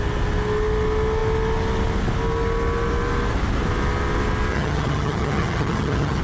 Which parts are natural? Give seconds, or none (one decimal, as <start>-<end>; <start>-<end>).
0.0-4.5